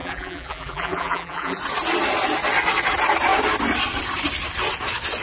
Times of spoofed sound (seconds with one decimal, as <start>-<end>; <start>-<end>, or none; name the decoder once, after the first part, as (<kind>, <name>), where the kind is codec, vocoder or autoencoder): 0.0-1.6 (vocoder, BigVGAN v2)